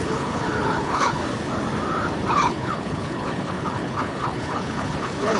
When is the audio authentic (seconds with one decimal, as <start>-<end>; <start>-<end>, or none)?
1.2-2.3